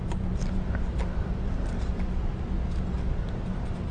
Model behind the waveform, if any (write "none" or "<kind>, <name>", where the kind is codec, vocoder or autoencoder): none